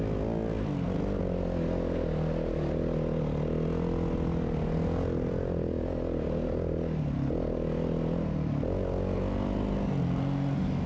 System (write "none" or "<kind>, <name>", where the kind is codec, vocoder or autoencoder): none